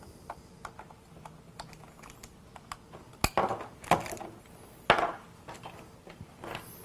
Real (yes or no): yes